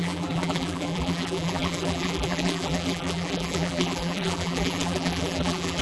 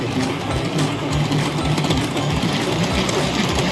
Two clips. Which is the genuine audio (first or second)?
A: second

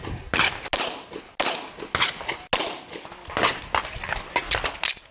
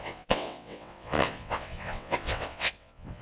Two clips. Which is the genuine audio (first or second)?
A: first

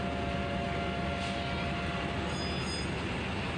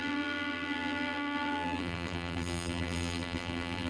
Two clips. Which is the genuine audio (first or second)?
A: first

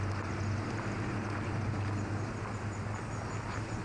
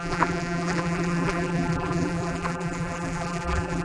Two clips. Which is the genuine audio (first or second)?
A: first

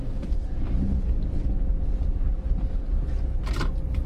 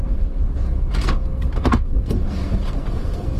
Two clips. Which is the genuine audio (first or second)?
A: first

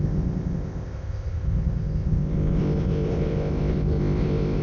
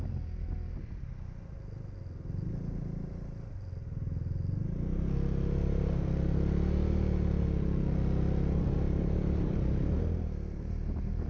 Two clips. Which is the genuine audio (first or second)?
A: second